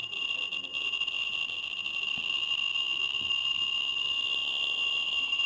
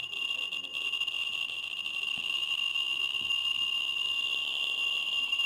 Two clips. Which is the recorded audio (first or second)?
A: first